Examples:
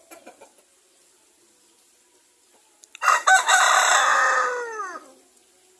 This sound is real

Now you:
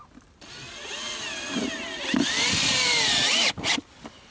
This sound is fake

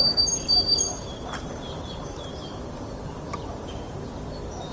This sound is fake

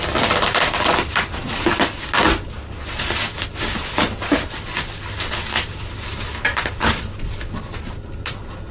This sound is real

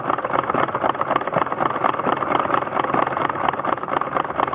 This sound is real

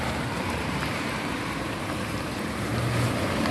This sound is fake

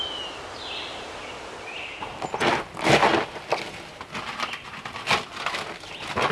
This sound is real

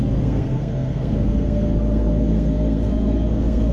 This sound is fake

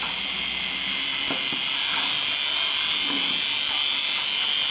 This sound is real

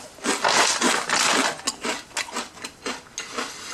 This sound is real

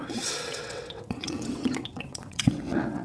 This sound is fake